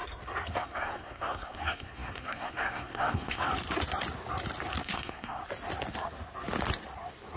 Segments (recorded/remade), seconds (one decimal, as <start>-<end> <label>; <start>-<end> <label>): 0.0-0.5 recorded; 0.5-3.5 remade; 3.5-4.8 recorded; 4.8-5.4 remade; 5.4-7.4 recorded